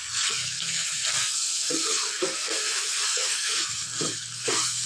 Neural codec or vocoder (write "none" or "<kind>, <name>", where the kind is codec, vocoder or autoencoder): codec, SNAC